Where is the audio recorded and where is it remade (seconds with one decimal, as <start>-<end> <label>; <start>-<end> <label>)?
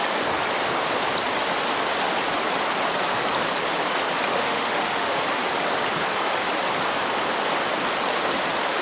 0.0-4.3 recorded; 4.3-5.2 remade; 5.2-8.8 recorded